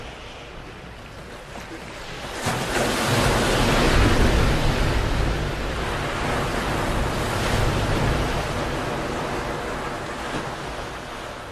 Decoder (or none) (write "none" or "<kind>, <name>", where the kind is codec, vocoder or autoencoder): none